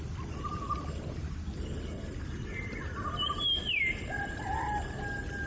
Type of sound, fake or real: real